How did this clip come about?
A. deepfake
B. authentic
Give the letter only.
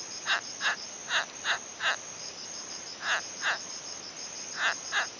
B